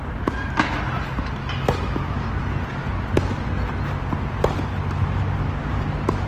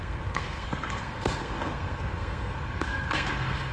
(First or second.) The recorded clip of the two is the first